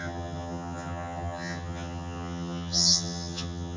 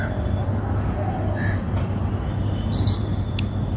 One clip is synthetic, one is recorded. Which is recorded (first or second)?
second